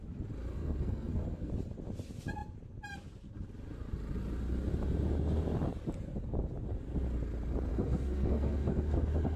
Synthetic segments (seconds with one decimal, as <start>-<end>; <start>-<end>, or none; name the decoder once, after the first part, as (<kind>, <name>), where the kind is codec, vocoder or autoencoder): 0.5-1.5 (codec, SNAC); 7.7-9.4